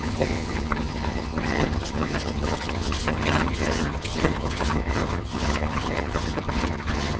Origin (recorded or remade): remade